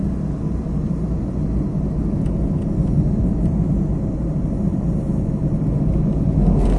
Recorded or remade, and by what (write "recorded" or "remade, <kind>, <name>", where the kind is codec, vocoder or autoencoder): recorded